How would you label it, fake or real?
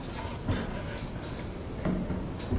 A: real